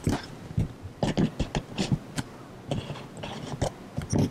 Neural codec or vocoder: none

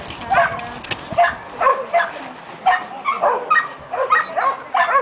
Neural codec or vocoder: none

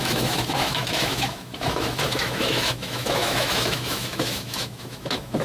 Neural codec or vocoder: autoencoder, DAC-VAE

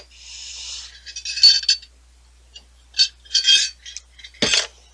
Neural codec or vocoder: none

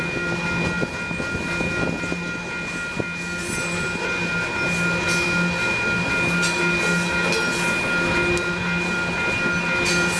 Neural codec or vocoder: none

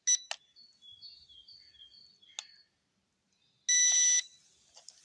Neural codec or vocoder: none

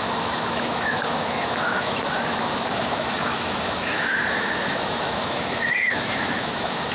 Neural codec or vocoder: autoencoder, DAC-VAE